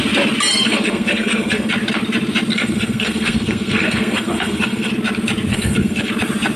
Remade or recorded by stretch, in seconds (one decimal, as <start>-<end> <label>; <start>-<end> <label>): 0.0-0.5 recorded; 0.5-1.7 remade; 1.7-2.5 recorded; 2.5-4.9 remade; 4.9-5.5 recorded; 5.5-6.1 remade; 6.1-6.6 recorded